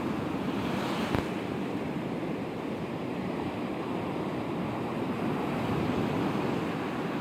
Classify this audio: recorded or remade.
recorded